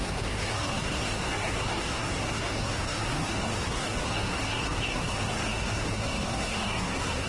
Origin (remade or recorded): remade